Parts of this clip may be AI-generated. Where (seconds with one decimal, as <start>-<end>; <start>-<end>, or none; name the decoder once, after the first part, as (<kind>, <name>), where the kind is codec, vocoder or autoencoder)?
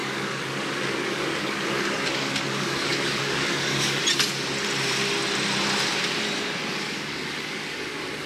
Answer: 0.0-4.0 (codec, DAC); 6.7-8.3